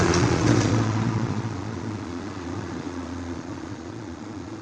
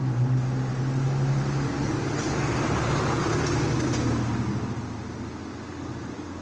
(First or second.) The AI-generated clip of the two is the first